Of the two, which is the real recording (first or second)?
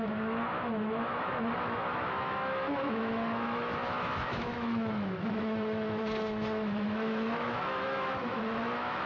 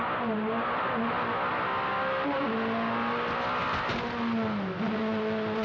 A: second